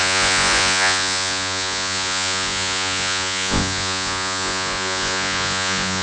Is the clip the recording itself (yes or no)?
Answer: no